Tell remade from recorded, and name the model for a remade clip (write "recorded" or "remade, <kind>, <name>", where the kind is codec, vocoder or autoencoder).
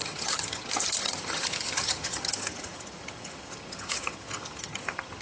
remade, vocoder, HiFi-GAN